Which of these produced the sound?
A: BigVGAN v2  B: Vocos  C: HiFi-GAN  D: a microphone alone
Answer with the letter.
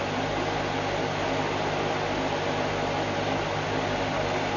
D